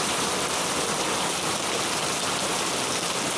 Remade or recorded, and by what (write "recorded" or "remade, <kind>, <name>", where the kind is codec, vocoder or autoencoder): remade, vocoder, BigVGAN v2